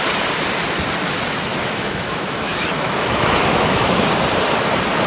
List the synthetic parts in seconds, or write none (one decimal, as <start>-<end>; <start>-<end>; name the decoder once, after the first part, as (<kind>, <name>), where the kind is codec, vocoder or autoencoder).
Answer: 1.5-4.0 (autoencoder, DAC-VAE)